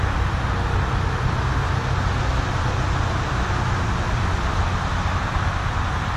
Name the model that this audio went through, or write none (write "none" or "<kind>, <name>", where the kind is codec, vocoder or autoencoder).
none